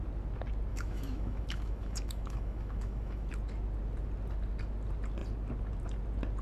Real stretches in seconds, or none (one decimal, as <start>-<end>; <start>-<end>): 0.0-0.7; 3.3-6.4

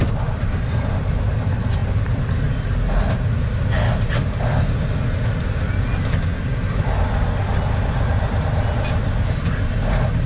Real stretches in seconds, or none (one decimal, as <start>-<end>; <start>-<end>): 0.0-10.3

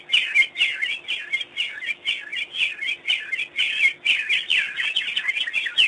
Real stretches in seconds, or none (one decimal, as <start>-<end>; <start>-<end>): 0.0-5.9

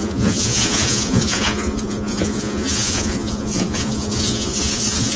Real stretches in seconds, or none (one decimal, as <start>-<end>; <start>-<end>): none

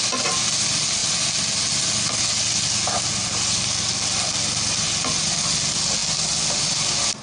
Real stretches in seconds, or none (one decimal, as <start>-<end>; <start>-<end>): 0.0-7.2

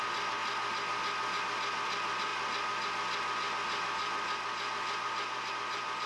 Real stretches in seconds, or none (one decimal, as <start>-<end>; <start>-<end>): 0.0-6.1

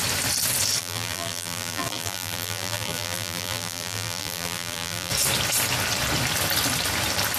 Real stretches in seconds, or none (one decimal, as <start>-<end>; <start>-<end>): 0.0-0.8; 5.1-7.4